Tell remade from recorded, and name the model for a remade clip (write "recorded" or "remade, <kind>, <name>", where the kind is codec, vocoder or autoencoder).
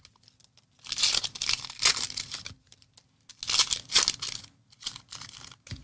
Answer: recorded